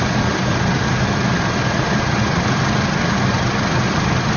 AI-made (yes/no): no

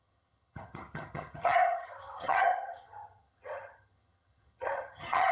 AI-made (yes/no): yes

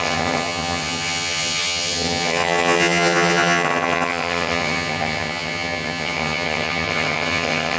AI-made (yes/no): yes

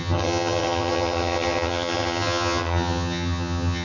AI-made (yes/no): yes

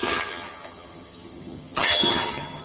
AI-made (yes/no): yes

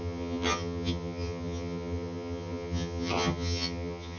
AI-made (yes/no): yes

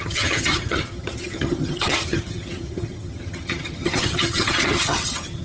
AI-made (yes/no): yes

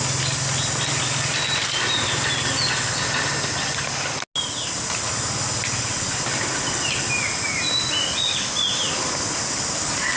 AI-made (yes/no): no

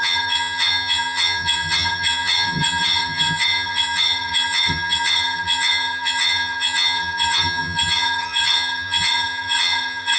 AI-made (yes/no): yes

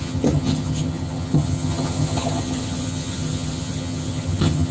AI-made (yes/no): yes